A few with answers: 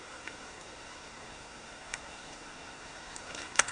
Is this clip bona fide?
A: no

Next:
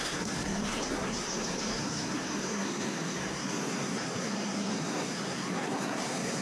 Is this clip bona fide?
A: no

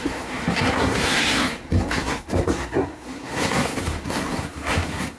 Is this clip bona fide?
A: no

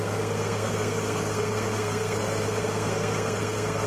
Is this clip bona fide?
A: no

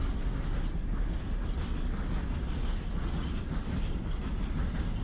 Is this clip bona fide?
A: yes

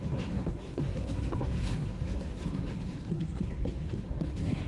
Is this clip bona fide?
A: no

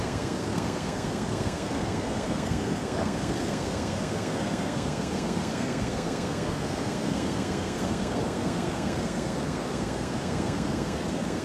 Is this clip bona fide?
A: no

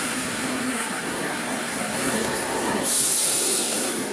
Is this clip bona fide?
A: no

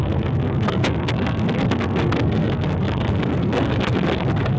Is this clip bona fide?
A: no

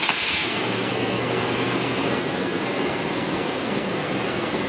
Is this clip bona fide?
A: no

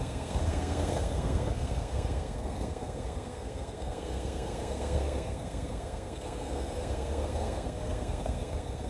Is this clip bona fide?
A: no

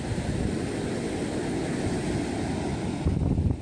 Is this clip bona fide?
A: yes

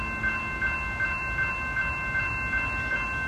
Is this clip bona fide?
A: yes